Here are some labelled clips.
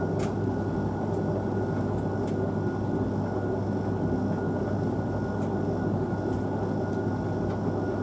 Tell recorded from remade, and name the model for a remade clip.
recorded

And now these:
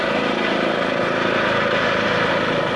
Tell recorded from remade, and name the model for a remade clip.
recorded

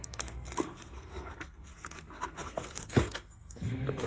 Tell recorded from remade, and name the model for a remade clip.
remade, codec, SNAC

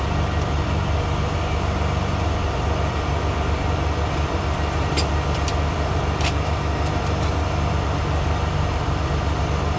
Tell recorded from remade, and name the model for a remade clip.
remade, vocoder, BigVGAN v2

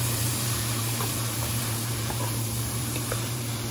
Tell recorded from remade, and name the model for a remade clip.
remade, vocoder, BigVGAN v2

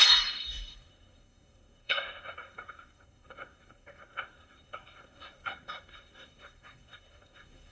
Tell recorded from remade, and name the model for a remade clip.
remade, codec, SNAC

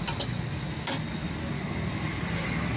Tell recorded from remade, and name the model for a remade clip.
recorded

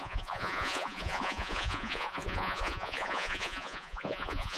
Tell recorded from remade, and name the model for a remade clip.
remade, vocoder, Vocos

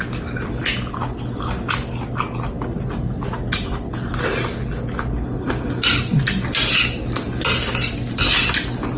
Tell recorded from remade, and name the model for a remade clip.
recorded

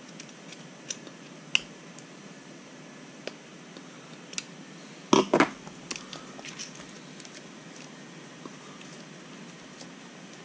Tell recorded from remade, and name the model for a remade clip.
recorded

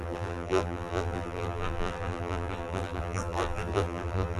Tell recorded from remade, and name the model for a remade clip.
remade, vocoder, BigVGAN v2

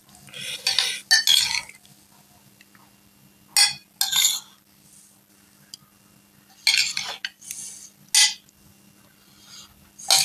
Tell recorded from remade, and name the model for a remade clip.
recorded